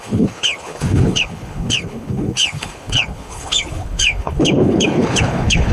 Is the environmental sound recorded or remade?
remade